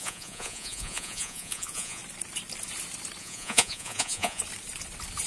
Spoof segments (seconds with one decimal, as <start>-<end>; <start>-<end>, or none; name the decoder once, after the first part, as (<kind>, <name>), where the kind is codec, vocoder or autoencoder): 0.0-2.0 (vocoder, Vocos); 3.2-4.4